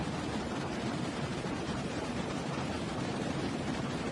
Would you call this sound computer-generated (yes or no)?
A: yes